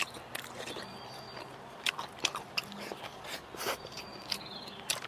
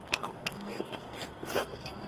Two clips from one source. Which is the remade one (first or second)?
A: second